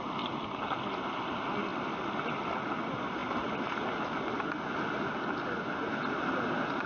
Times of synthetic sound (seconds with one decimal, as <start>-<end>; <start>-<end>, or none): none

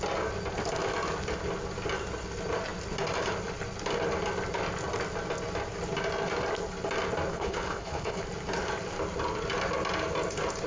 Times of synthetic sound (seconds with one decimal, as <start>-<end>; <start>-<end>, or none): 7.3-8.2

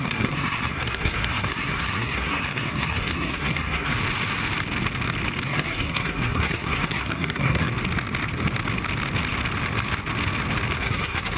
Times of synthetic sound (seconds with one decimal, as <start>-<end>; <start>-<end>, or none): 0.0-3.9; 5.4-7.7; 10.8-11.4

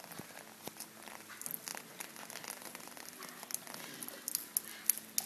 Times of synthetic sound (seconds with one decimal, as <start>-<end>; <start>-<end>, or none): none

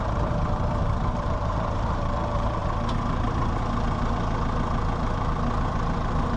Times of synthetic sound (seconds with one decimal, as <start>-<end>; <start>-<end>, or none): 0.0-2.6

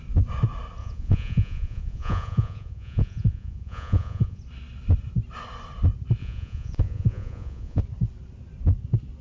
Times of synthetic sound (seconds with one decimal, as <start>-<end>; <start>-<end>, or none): 0.8-4.4; 6.2-7.8